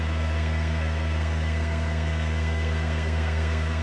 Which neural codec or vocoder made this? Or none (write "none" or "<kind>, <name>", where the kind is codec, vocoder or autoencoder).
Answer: codec, SNAC